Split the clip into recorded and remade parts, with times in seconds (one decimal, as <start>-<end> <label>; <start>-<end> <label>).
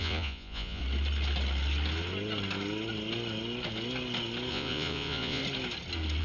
0.0-0.8 remade; 0.8-4.5 recorded; 4.5-5.4 remade; 5.4-6.2 recorded